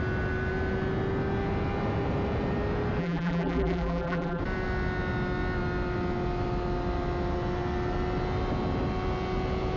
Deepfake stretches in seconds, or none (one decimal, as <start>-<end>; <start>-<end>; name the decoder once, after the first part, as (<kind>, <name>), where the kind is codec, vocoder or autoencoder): 3.0-4.4 (vocoder, BigVGAN v2)